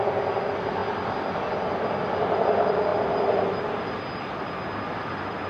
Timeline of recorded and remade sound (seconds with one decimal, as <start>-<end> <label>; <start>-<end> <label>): 0.0-5.5 recorded